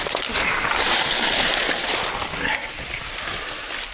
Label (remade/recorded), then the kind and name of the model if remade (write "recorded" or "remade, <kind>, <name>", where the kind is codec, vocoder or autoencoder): recorded